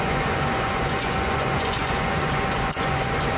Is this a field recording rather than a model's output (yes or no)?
no